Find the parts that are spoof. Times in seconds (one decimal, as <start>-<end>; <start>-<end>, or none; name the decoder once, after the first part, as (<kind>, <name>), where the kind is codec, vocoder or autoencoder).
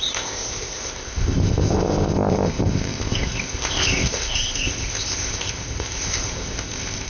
0.0-7.1 (codec, ZipCodec)